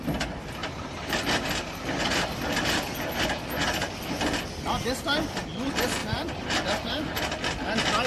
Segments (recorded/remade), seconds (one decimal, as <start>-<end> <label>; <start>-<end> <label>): 0.0-0.6 recorded; 0.6-3.4 remade; 3.4-6.0 recorded; 6.0-7.2 remade; 7.2-8.1 recorded

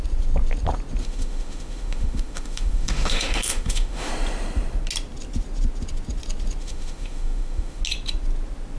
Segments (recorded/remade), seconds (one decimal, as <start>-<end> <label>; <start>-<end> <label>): 0.0-1.0 recorded; 1.0-4.1 remade; 4.1-6.6 recorded; 6.6-7.8 remade; 7.8-8.8 recorded

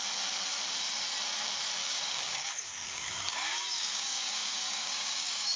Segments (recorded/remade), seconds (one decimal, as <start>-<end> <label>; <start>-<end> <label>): 0.0-1.8 recorded; 1.8-5.6 remade

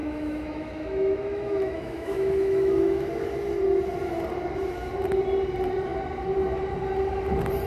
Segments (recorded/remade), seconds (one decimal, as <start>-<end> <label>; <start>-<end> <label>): 0.0-3.1 remade; 3.1-7.7 recorded